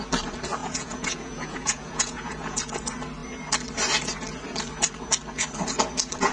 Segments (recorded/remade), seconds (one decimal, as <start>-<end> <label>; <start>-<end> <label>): 0.0-0.6 recorded; 0.6-2.6 remade; 2.6-6.3 recorded